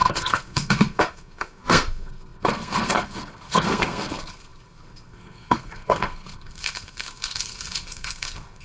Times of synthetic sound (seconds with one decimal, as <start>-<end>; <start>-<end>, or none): 0.0-8.6